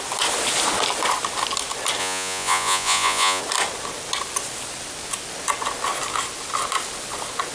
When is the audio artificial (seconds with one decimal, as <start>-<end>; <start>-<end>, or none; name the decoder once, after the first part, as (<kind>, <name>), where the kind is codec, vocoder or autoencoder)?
2.0-3.4 (vocoder, Vocos)